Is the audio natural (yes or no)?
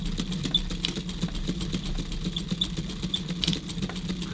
yes